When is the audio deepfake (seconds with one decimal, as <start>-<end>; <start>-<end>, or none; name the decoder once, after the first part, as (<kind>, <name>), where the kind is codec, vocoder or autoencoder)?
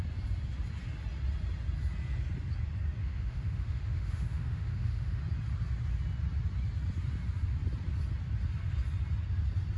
3.0-5.2 (autoencoder, DAC-VAE)